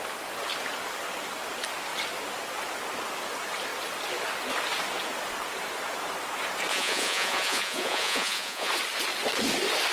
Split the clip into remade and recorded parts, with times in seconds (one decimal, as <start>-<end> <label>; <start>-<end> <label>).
0.0-6.7 recorded; 6.7-8.7 remade; 8.7-9.9 recorded